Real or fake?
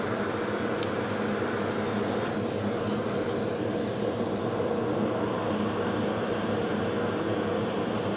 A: real